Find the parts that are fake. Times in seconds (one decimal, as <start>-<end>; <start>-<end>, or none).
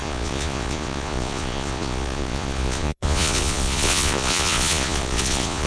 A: 0.0-5.7